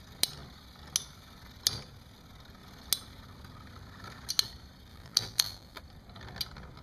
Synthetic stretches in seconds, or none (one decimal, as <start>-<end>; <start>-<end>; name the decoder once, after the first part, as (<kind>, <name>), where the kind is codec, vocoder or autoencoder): 4.9-5.8 (vocoder, BigVGAN v2)